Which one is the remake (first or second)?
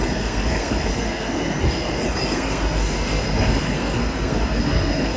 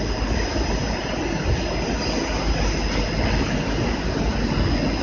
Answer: first